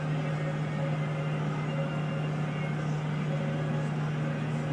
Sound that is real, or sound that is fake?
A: real